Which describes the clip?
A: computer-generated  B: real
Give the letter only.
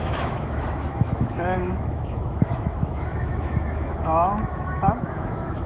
A